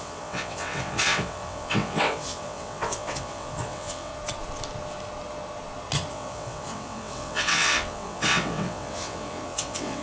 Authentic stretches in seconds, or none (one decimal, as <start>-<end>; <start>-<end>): 4.1-6.1